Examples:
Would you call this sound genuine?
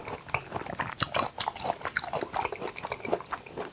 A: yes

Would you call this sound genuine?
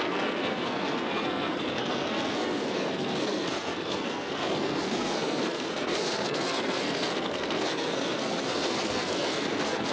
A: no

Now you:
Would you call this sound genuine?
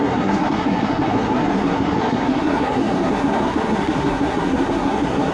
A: no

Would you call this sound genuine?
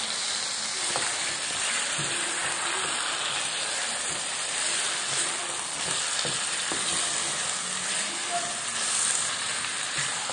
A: yes